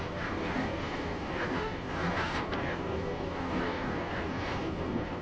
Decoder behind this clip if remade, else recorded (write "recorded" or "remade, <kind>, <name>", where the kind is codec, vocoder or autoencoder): remade, codec, DAC